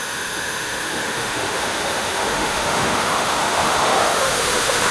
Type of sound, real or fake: fake